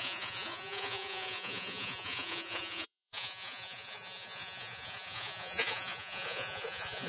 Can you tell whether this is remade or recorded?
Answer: remade